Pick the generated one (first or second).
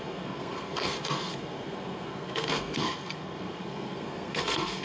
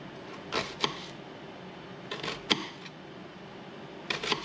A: first